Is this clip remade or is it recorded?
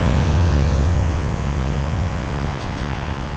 remade